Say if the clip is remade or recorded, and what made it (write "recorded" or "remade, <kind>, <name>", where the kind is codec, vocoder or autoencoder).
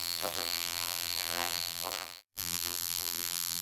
remade, vocoder, BigVGAN v2